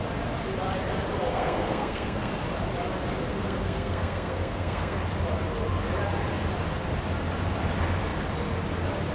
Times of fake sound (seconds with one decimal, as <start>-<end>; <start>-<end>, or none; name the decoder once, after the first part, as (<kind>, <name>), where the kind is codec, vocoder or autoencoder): 1.3-2.3 (codec, SNAC); 3.3-5.0